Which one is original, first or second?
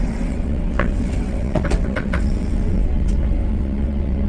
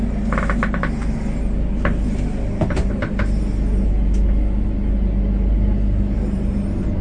second